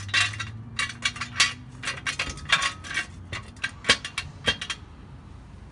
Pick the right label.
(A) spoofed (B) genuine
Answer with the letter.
B